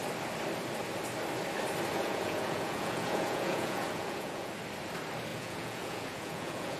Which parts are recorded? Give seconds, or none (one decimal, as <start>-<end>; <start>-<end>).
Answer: 0.0-1.9; 4.5-5.3